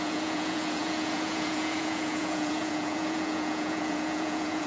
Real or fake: fake